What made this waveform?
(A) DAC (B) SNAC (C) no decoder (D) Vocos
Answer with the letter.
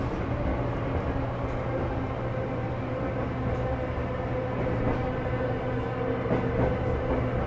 C